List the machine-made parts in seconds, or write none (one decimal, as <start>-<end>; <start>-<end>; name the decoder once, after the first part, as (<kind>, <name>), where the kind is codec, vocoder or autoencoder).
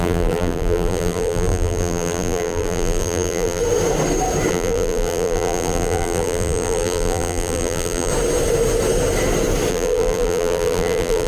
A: 0.0-3.6 (vocoder, BigVGAN v2); 4.5-8.1; 9.7-11.3